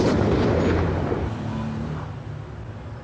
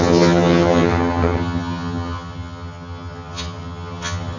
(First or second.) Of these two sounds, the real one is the first